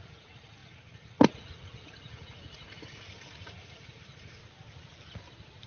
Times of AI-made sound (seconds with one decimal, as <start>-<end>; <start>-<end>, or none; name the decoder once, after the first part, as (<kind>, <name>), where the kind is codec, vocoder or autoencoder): 0.0-4.4 (vocoder, Vocos)